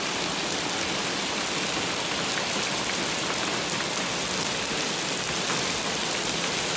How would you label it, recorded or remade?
recorded